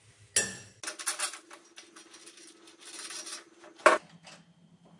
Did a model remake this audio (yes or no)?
no